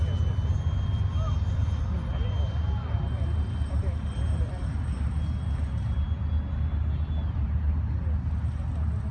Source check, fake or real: real